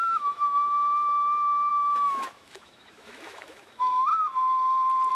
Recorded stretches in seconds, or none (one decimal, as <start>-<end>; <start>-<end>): 4.1-5.1